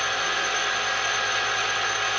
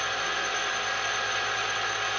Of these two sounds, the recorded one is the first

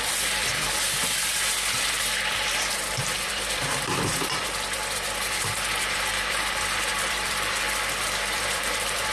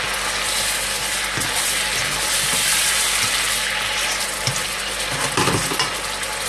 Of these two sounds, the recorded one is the second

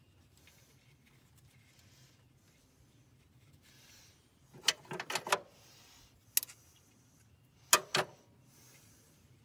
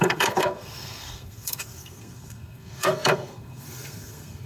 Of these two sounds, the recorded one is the first